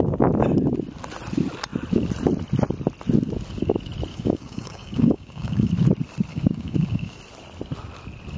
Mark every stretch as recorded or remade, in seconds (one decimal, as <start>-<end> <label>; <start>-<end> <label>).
0.0-4.1 recorded; 4.1-5.7 remade; 5.7-6.3 recorded; 6.3-7.2 remade; 7.2-8.4 recorded